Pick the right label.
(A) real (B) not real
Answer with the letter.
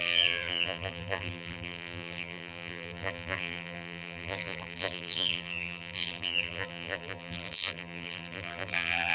B